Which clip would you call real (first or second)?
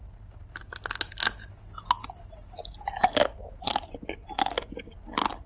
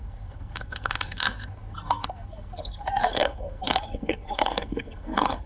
first